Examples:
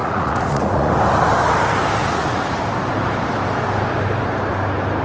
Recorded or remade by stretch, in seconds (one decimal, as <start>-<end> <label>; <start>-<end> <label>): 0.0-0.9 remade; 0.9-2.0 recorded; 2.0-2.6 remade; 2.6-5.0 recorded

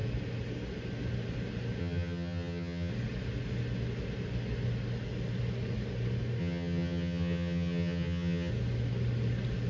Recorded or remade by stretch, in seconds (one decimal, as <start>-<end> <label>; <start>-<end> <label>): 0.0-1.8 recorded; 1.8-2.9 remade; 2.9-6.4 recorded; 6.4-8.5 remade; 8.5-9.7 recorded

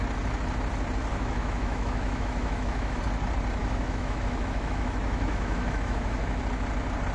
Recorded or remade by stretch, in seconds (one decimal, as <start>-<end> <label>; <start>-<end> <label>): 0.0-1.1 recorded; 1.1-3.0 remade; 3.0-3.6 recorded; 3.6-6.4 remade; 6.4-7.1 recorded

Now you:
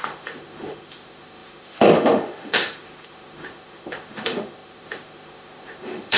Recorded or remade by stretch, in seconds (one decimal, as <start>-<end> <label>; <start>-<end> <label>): 0.0-6.2 remade

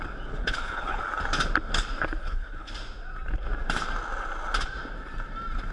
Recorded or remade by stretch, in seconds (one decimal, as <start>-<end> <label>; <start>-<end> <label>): 0.0-0.4 recorded; 0.4-1.0 remade; 1.0-2.2 recorded; 2.2-2.7 remade; 2.7-5.7 recorded